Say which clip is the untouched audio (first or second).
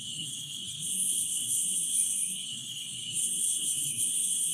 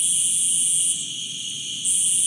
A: second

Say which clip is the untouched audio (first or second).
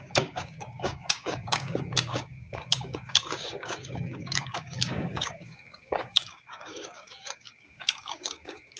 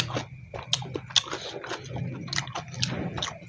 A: second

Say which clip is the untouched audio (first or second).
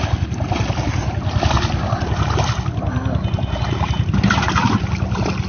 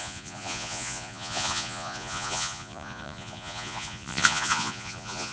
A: first